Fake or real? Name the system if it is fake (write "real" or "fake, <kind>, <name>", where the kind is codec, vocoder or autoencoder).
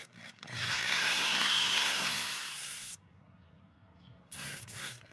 fake, codec, SNAC